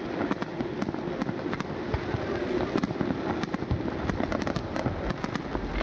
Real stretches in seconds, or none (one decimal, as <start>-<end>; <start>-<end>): 0.0-5.8